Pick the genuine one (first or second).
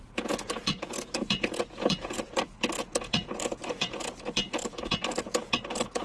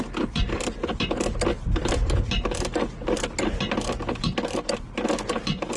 second